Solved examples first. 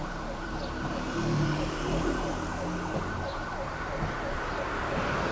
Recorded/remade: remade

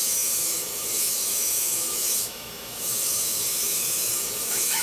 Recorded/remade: remade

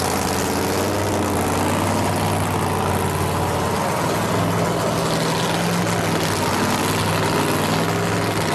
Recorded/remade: recorded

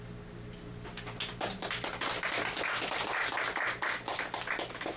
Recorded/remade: recorded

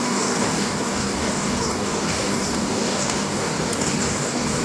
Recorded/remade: remade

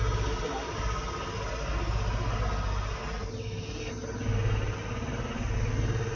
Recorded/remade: recorded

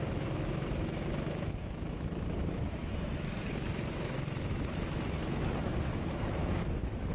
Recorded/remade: remade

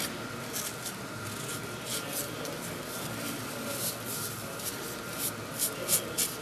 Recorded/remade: recorded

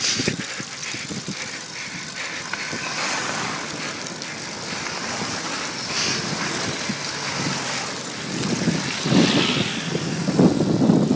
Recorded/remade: recorded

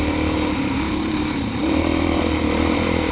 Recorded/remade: remade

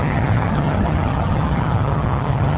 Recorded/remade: remade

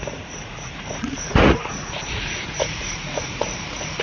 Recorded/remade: remade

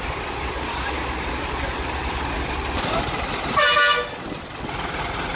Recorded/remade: recorded